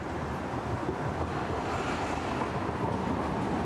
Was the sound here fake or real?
real